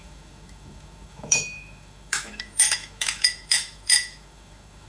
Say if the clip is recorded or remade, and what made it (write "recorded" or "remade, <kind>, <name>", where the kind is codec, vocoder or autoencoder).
remade, autoencoder, DAC-VAE